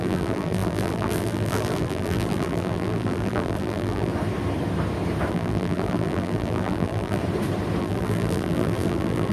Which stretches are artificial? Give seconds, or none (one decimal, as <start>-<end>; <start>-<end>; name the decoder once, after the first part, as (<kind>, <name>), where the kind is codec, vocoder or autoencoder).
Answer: 0.0-4.1 (vocoder, BigVGAN v2); 5.3-7.2; 7.8-9.3